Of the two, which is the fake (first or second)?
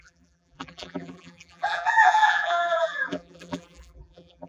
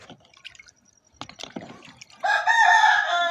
first